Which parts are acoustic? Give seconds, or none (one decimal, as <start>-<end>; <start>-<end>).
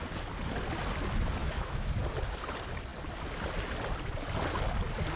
0.0-1.4; 1.9-5.2